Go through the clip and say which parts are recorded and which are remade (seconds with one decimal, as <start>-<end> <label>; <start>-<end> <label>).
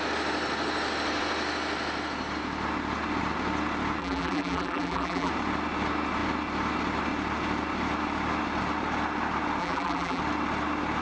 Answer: 0.0-4.0 recorded; 4.0-5.3 remade; 5.3-9.6 recorded; 9.6-10.2 remade; 10.2-11.0 recorded